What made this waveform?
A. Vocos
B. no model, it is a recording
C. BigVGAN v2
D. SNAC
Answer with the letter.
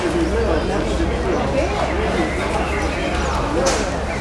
B